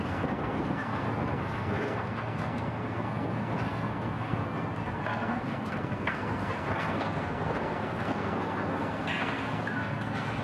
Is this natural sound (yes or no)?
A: no